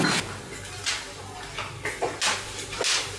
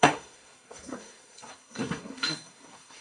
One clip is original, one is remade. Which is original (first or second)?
first